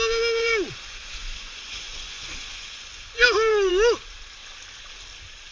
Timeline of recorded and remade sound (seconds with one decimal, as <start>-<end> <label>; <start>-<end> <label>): 0.0-0.4 recorded; 0.4-3.7 remade; 3.7-5.5 recorded